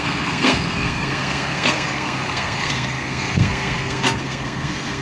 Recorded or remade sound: remade